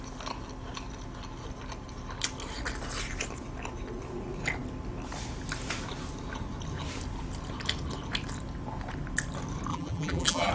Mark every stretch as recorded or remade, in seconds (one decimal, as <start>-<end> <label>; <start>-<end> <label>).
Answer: 0.0-9.7 recorded; 9.7-10.5 remade

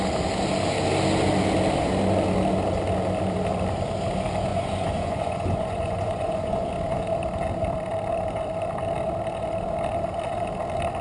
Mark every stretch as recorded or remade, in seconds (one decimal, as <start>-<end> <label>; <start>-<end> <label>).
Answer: 0.0-4.5 recorded; 4.5-6.7 remade; 6.7-11.0 recorded

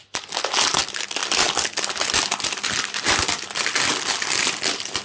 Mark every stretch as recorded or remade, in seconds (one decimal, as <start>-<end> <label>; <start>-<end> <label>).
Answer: 0.0-5.0 recorded

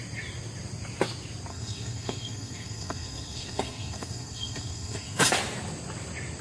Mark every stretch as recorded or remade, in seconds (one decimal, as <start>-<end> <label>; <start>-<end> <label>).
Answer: 0.0-1.5 recorded; 1.5-5.3 remade; 5.3-6.4 recorded